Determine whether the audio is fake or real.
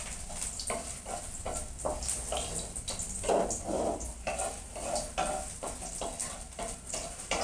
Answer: real